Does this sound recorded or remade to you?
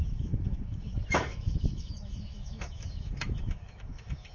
remade